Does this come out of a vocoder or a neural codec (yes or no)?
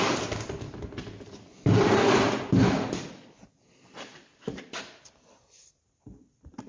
no